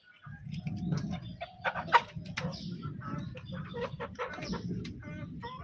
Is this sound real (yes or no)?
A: yes